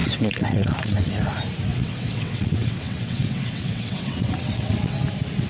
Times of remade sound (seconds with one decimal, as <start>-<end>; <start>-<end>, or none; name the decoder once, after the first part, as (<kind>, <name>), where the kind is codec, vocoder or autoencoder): 0.0-1.1 (vocoder, WaveNeXt); 1.7-5.0